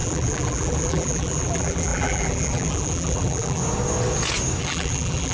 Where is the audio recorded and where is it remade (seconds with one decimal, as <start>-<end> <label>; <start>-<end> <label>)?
0.0-3.6 remade; 3.6-4.6 recorded; 4.6-5.3 remade

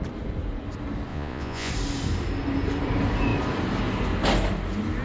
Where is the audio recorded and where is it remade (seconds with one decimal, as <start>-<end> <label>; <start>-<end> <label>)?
0.0-1.1 recorded; 1.1-1.7 remade; 1.7-5.0 recorded

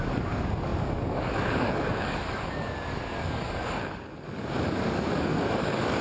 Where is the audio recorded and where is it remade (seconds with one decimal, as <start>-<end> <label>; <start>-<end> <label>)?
0.0-6.0 remade

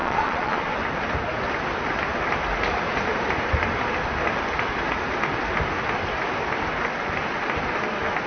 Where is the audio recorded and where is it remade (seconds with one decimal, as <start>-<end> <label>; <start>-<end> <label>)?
0.0-0.7 remade; 0.7-8.3 recorded

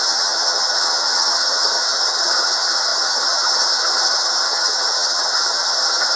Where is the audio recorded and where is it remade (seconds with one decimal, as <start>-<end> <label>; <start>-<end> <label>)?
0.0-6.2 remade

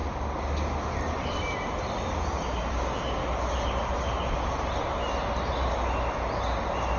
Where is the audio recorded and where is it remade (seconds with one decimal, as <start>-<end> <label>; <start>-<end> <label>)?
0.0-2.7 recorded; 2.7-3.2 remade; 3.2-7.0 recorded